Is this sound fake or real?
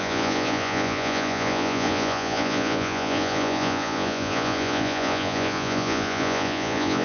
fake